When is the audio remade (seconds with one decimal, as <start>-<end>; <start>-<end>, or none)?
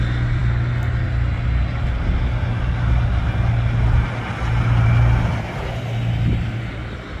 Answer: none